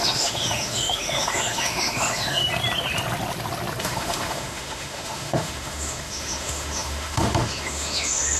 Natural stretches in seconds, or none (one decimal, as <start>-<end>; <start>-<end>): 2.4-3.8